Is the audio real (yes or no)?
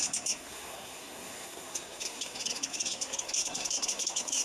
no